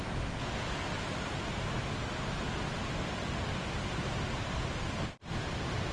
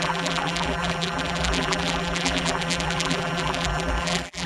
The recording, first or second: first